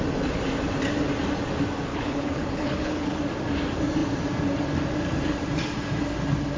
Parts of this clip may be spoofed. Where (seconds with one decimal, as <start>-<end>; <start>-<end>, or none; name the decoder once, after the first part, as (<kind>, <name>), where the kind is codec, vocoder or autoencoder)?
1.9-3.2 (codec, HILCodec)